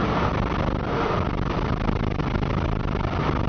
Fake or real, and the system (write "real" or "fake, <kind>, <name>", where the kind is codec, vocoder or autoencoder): real